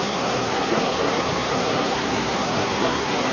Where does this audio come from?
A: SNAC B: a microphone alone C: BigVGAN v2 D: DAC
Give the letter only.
A